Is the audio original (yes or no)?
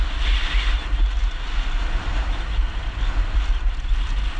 yes